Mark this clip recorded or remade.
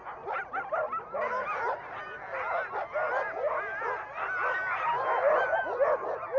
recorded